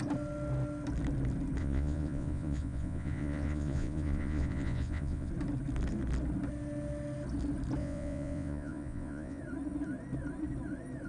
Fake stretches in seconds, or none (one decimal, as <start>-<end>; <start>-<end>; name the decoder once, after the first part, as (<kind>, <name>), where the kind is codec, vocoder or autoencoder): 1.6-5.3 (vocoder, Vocos); 7.8-9.4